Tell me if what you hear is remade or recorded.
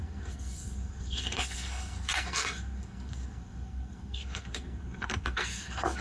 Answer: remade